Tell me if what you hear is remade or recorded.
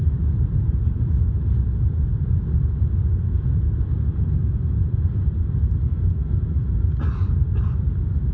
recorded